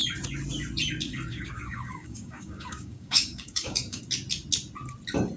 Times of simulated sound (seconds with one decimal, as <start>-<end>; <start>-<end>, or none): 1.3-4.0